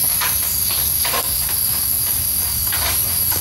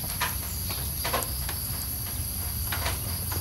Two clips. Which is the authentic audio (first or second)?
second